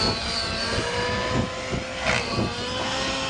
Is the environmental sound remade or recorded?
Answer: recorded